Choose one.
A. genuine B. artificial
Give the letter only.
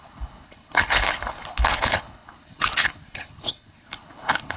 B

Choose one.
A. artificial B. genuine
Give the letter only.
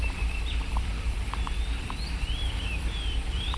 A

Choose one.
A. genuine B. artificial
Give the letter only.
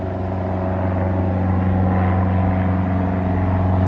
A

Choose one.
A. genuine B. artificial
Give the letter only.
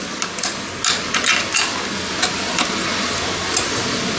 A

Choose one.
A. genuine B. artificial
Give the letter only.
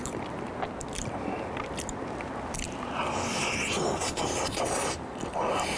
A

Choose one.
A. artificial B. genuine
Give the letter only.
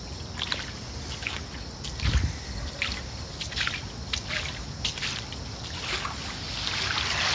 B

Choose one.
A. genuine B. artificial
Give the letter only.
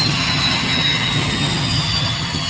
B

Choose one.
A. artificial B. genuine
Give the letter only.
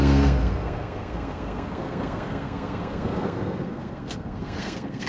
A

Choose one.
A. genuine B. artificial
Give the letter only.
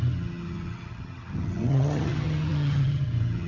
B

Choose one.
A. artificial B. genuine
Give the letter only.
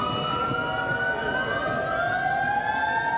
B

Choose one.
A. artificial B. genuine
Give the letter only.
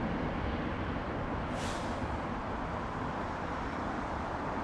A